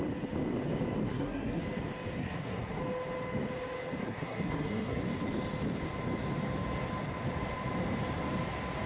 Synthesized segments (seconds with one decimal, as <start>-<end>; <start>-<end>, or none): 1.0-1.6; 2.2-2.8; 4.0-5.0